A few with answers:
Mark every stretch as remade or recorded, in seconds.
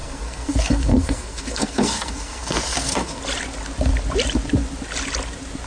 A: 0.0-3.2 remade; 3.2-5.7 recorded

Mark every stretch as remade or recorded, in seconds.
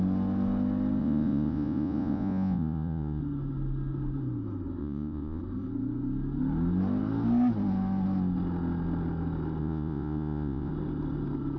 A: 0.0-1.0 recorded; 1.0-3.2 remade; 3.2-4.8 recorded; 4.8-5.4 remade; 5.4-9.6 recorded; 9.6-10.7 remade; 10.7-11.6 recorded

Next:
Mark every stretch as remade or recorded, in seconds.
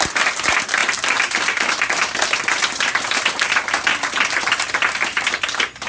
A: 0.0-0.8 remade; 0.8-1.4 recorded; 1.4-5.9 remade